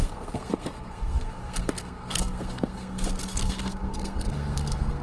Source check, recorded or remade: remade